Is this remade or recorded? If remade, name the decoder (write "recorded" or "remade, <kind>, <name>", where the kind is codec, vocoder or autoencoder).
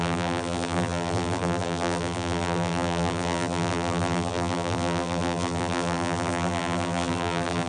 remade, vocoder, BigVGAN v2